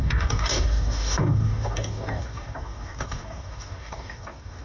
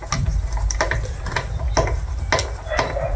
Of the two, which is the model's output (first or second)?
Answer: first